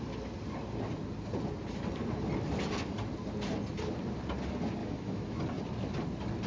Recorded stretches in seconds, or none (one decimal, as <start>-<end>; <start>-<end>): 0.0-4.8; 5.4-6.5